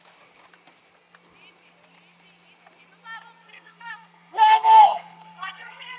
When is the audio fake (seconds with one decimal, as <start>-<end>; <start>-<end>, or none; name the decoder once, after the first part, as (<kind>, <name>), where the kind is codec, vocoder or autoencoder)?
3.5-6.0 (codec, SNAC)

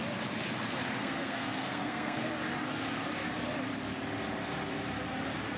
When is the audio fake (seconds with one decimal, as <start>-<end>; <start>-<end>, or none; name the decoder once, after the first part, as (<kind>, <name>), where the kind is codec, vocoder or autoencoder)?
1.0-2.3 (codec, SNAC)

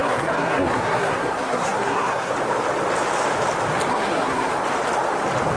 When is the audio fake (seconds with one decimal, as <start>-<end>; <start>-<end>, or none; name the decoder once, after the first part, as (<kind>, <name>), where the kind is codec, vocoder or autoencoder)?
0.0-2.3 (codec, SNAC); 3.9-4.5

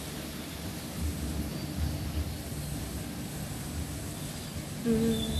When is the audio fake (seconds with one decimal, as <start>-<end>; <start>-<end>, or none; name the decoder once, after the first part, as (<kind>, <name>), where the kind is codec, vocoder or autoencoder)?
none

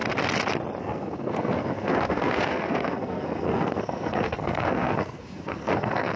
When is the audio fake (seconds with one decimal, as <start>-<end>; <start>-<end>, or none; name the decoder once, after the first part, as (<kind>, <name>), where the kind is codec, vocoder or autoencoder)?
0.8-6.2 (codec, SNAC)

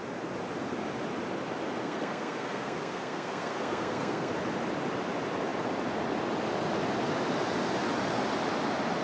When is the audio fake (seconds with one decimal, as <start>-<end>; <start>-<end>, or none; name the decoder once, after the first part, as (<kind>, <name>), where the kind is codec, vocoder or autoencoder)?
1.8-4.3 (codec, SNAC)

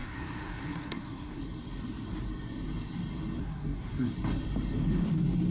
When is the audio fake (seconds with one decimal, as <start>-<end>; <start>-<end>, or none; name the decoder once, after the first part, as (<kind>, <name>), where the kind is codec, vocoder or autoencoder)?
0.0-1.4 (codec, SNAC); 3.4-4.1

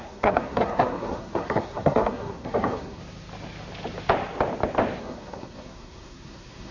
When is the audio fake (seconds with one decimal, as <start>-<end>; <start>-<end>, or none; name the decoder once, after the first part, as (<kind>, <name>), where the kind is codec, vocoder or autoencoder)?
0.0-3.0 (codec, SNAC); 5.0-6.7